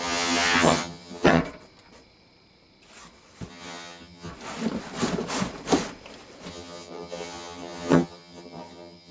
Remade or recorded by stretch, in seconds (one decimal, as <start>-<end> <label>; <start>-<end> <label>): 0.0-1.4 remade; 1.4-3.5 recorded; 3.5-4.3 remade; 4.3-6.5 recorded; 6.5-9.1 remade

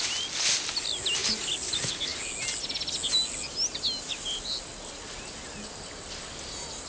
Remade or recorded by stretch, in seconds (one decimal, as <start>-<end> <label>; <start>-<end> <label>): 0.0-6.9 recorded

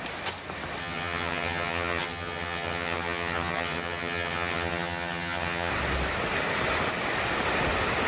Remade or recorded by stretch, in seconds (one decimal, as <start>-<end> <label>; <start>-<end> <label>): 0.0-0.8 recorded; 0.8-5.7 remade; 5.7-8.1 recorded

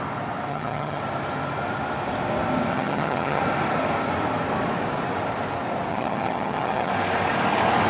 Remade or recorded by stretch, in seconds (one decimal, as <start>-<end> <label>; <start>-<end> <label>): 0.0-0.5 recorded; 0.5-1.0 remade; 1.0-2.7 recorded; 2.7-3.4 remade; 3.4-5.9 recorded; 5.9-6.9 remade; 6.9-7.9 recorded

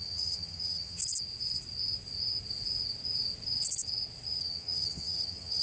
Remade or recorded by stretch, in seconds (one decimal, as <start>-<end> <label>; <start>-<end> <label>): 0.0-1.0 remade; 1.0-4.4 recorded; 4.4-5.6 remade

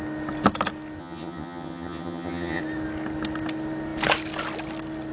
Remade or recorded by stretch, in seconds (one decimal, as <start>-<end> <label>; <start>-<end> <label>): 0.0-1.0 recorded; 1.0-2.6 remade; 2.6-5.1 recorded

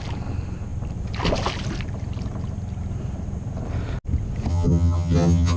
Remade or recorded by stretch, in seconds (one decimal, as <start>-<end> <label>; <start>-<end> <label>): 0.0-4.5 recorded; 4.5-5.6 remade